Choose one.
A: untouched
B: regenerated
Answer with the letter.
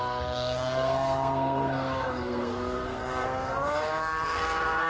B